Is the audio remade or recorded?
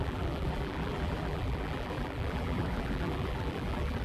remade